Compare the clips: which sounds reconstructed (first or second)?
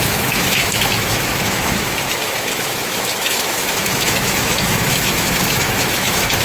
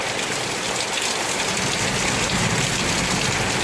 first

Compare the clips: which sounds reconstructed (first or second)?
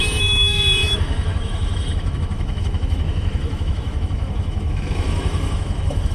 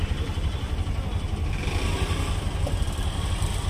first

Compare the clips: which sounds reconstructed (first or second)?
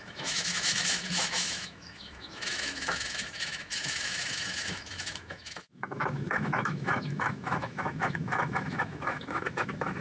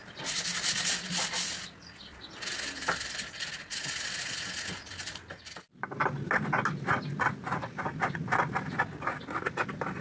first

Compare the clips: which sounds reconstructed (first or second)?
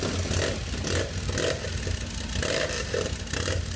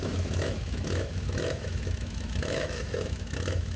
second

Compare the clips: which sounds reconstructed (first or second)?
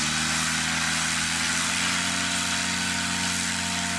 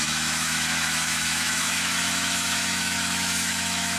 second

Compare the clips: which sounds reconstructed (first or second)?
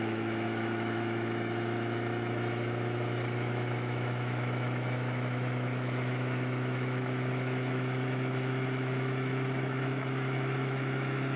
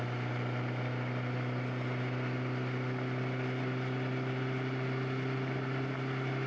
first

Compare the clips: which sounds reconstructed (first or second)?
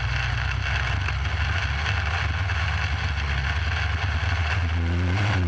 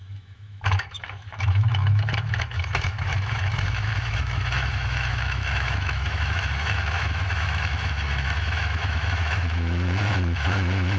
second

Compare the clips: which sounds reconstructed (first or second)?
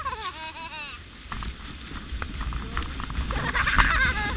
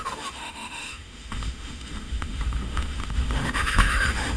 second